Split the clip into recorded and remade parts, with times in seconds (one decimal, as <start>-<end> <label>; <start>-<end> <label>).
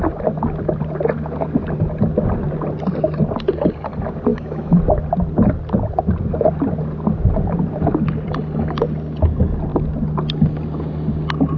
0.0-4.3 recorded; 4.3-4.8 remade; 4.8-11.6 recorded